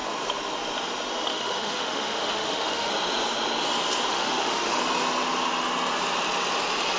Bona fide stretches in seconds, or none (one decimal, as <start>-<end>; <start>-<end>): 0.0-1.3; 2.9-4.1; 4.8-7.0